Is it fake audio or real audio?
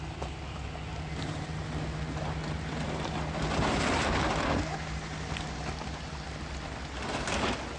real